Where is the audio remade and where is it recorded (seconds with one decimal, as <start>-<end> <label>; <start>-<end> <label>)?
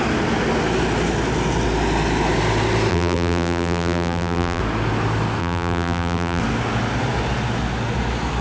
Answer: 0.0-2.9 recorded; 2.9-4.6 remade; 4.6-5.4 recorded; 5.4-6.4 remade; 6.4-8.4 recorded